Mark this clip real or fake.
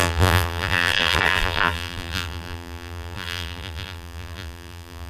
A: fake